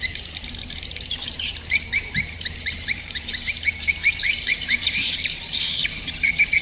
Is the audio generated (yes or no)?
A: yes